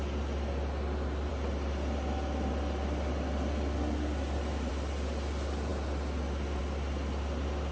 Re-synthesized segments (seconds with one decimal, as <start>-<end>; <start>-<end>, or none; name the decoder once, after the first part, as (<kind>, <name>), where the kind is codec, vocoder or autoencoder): none